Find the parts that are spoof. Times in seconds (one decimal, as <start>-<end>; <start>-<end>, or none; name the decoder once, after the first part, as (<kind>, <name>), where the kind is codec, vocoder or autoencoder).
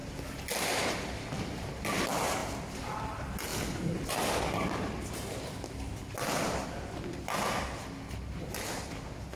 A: 2.4-3.0 (vocoder, BigVGAN v2)